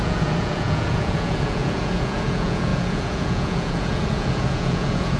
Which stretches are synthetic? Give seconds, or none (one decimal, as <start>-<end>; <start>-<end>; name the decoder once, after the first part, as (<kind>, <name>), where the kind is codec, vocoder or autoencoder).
0.0-5.2 (vocoder, Vocos)